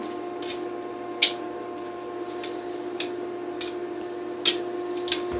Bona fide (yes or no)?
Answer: yes